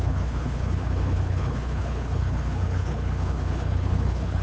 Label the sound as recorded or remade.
remade